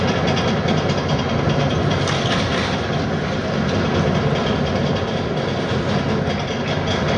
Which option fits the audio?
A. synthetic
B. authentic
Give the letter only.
B